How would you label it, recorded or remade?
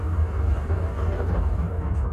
remade